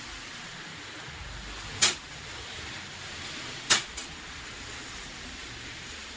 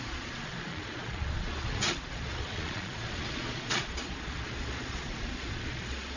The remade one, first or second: second